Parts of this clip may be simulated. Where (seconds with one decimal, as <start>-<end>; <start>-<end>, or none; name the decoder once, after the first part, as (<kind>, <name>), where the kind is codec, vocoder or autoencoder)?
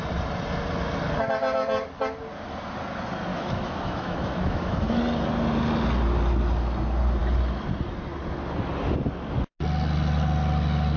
3.3-5.0 (autoencoder, DAC-VAE)